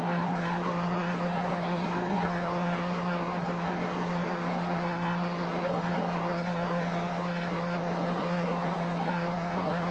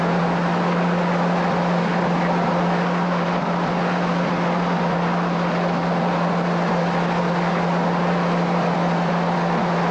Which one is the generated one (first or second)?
first